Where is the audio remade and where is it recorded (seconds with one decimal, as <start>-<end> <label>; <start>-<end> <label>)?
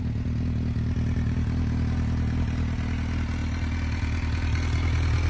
0.0-5.3 recorded